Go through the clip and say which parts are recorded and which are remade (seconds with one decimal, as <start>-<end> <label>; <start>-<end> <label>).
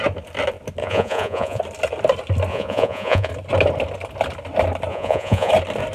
0.0-0.8 recorded; 0.8-1.6 remade; 1.6-2.5 recorded; 2.5-3.3 remade; 3.3-4.9 recorded; 4.9-5.5 remade; 5.5-5.9 recorded